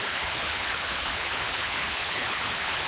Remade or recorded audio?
remade